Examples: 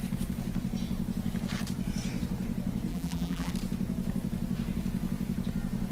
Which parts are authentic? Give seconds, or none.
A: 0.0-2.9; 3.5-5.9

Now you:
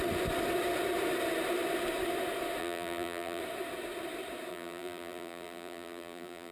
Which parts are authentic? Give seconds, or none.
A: 0.0-2.6; 3.4-4.5

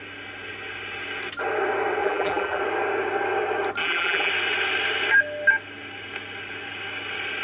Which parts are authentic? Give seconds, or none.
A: 0.0-2.0; 2.6-3.8; 4.3-7.4